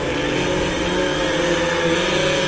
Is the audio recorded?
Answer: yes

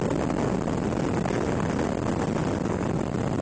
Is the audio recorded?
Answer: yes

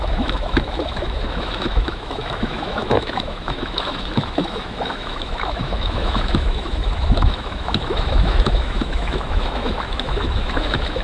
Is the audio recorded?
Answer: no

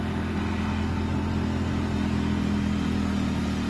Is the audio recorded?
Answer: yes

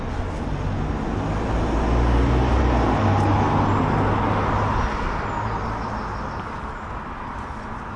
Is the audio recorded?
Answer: yes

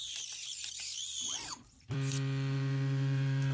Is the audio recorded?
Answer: no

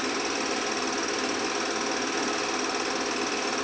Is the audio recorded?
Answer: yes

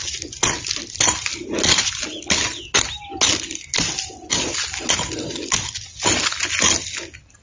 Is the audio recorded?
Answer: yes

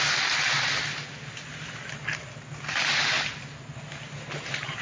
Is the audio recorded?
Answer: yes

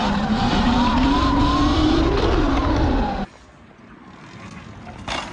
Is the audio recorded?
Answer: yes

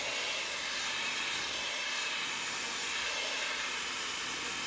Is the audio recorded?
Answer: yes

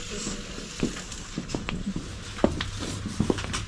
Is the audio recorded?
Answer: yes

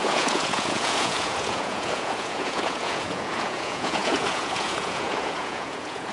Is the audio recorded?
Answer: no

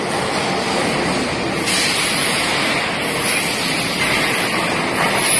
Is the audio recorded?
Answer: yes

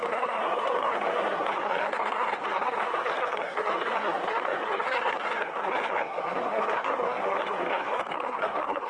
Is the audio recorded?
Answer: no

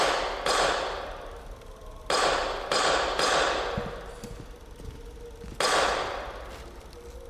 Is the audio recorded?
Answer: yes